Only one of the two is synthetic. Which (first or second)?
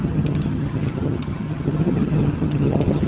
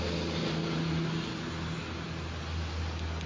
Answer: first